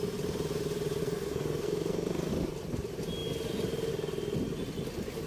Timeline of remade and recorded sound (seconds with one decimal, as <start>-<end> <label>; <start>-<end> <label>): 0.0-1.0 recorded; 1.0-2.3 remade; 2.3-5.3 recorded